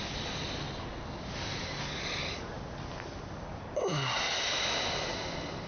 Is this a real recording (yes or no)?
yes